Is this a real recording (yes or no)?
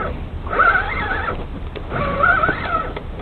yes